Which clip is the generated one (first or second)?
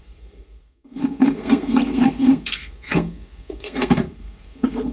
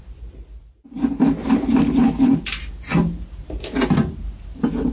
first